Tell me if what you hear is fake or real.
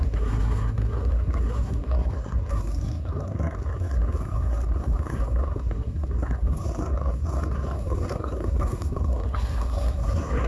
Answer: fake